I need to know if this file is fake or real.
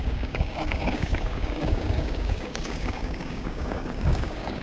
fake